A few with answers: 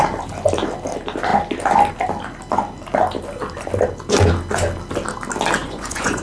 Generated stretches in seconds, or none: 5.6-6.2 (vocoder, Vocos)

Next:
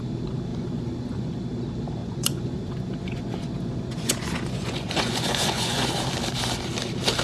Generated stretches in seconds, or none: 0.5-1.4 (vocoder, Vocos); 2.0-5.9

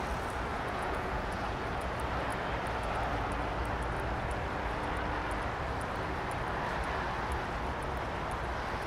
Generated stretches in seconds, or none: 0.5-1.6 (vocoder, Vocos)

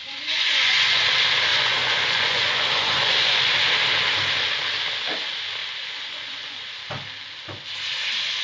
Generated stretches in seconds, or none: 0.0-1.0 (vocoder, Vocos); 1.5-3.5; 5.6-6.7

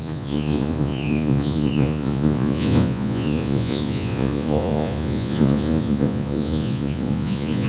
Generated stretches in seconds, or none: 0.0-7.7 (vocoder, Vocos)

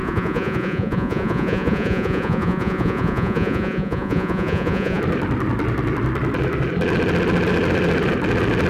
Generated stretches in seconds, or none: 0.0-5.0 (vocoder, Vocos)